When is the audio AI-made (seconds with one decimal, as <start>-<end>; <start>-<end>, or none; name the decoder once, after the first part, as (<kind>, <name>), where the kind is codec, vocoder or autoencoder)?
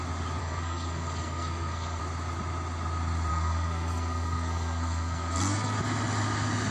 0.4-2.0 (codec, SNAC); 3.3-5.8